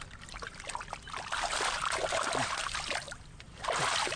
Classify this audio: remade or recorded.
recorded